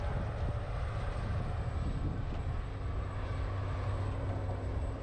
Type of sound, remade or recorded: recorded